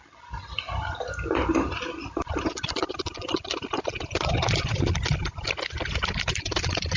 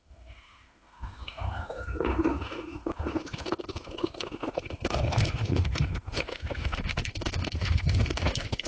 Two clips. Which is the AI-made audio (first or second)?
second